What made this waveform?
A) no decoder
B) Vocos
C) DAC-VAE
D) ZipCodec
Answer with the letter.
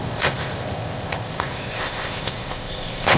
D